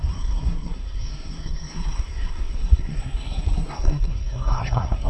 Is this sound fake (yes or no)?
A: yes